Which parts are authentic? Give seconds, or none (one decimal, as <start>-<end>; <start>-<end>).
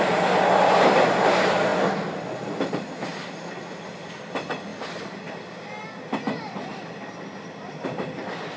0.0-8.6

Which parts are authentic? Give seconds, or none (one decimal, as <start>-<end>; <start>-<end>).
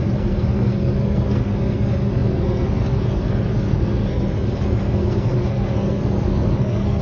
none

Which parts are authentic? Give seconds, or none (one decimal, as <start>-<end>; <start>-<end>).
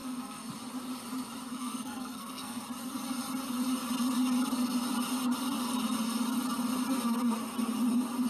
0.5-1.5; 2.6-8.3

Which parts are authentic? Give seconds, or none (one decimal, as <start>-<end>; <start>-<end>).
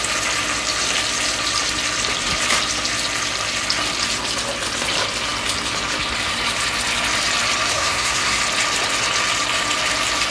0.0-7.7; 8.4-10.3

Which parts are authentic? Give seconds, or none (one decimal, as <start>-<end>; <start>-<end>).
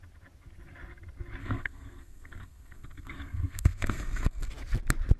0.0-1.4; 4.5-5.2